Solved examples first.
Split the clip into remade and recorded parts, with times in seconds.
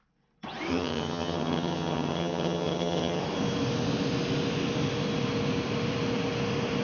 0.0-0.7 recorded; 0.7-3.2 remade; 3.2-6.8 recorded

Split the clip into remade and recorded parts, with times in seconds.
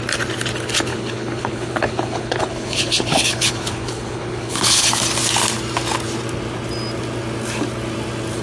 0.0-0.9 recorded; 0.9-4.9 remade; 4.9-8.4 recorded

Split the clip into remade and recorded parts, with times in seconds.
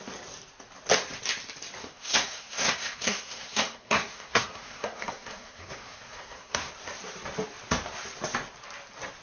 0.0-1.8 recorded; 1.8-6.7 remade; 6.7-9.2 recorded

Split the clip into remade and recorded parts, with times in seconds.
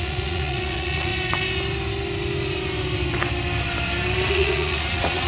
0.0-1.1 remade; 1.1-4.3 recorded; 4.3-5.3 remade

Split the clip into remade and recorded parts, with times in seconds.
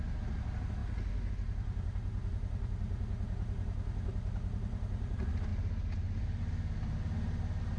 0.0-7.8 recorded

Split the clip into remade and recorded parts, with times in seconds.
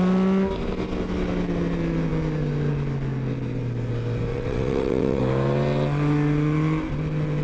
0.0-4.3 recorded; 4.3-5.2 remade; 5.2-7.4 recorded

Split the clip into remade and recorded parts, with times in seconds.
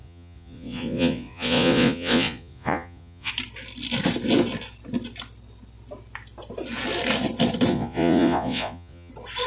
0.0-3.3 remade; 3.3-7.7 recorded; 7.7-9.1 remade; 9.1-9.5 recorded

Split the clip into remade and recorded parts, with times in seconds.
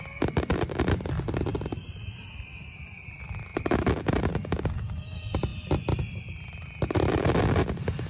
0.0-8.1 recorded